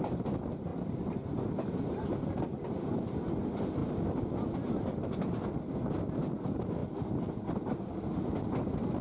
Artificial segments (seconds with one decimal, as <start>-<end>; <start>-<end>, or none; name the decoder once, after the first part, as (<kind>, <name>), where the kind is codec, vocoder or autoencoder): none